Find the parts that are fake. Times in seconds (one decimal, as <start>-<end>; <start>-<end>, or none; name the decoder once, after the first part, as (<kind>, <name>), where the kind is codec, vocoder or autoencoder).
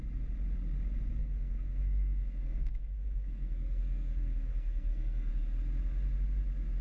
1.2-5.3 (codec, SNAC)